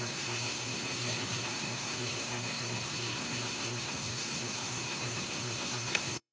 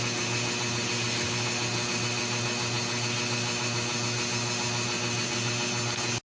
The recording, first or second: second